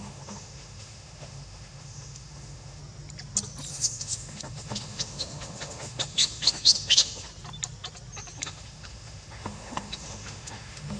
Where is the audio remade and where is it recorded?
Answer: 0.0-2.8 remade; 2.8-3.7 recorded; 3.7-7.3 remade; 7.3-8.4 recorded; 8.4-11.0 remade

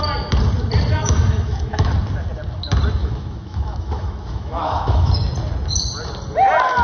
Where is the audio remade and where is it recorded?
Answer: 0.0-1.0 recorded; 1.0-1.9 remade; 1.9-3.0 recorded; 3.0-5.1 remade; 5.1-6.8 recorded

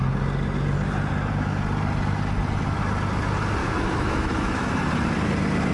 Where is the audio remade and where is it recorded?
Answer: 0.0-3.6 recorded; 3.6-4.7 remade; 4.7-5.7 recorded

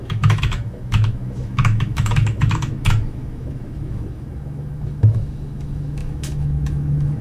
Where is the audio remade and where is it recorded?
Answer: 0.0-7.2 remade